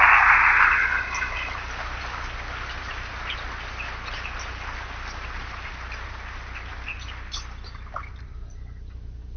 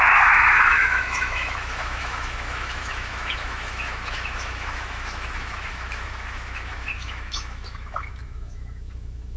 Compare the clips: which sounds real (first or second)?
first